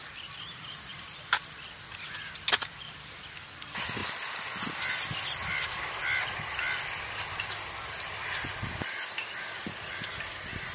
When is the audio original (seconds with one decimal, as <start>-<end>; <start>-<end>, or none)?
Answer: 0.0-10.7